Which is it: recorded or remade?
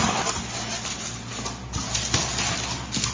recorded